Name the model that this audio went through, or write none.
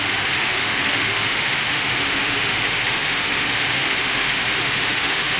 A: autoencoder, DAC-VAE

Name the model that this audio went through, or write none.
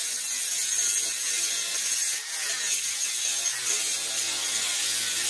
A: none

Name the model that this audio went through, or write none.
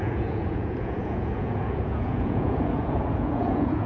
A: vocoder, Vocos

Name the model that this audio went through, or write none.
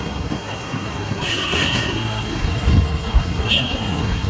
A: codec, SNAC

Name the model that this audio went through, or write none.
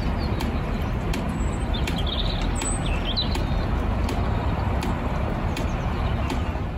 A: none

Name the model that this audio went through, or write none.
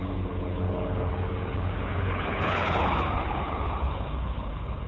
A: codec, HILCodec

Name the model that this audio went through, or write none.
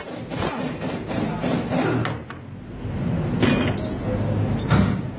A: none